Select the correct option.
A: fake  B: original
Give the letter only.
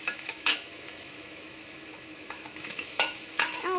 A